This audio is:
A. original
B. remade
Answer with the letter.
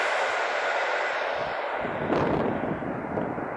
A